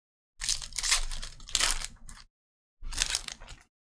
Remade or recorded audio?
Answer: recorded